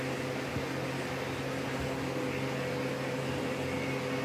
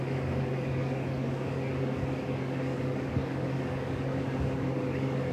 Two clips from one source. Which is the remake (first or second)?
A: second